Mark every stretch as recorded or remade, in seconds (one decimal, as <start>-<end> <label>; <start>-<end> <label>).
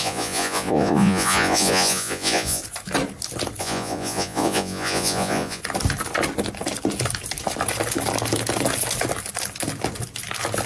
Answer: 0.0-2.6 remade; 2.6-3.6 recorded; 3.6-5.6 remade; 5.6-10.7 recorded